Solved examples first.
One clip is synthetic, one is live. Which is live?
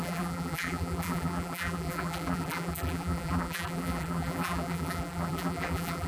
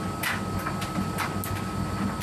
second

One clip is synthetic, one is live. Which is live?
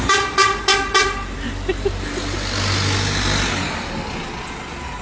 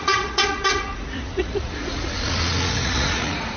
first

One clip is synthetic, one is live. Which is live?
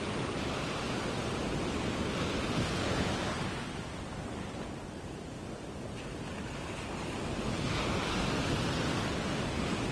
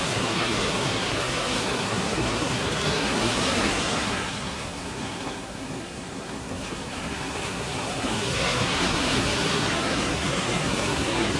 first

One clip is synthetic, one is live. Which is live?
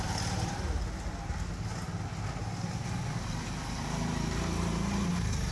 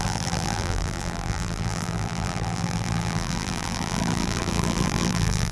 first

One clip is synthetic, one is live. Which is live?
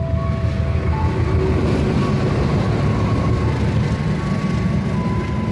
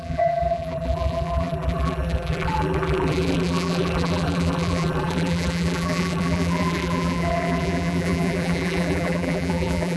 first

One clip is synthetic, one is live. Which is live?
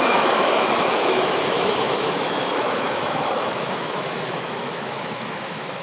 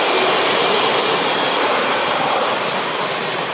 second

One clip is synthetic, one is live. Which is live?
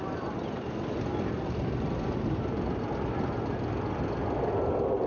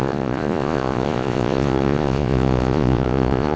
first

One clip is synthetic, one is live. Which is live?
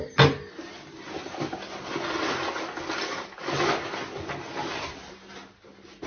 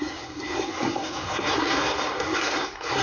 first